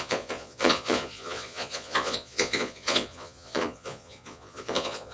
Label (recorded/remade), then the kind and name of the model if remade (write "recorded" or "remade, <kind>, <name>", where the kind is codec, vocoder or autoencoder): remade, vocoder, Vocos